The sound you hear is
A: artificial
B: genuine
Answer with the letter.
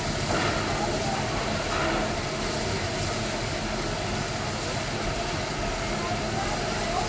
B